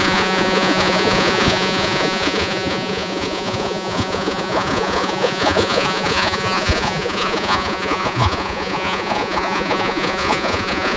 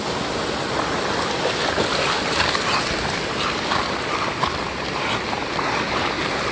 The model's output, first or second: first